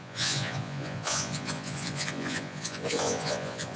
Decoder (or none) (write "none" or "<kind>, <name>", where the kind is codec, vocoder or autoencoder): vocoder, Vocos